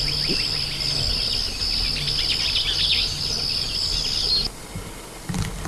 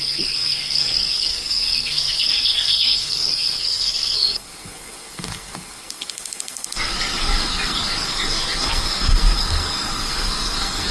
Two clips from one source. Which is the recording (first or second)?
first